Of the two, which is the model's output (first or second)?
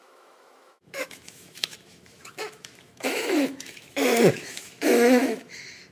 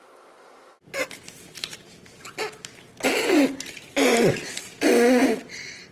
first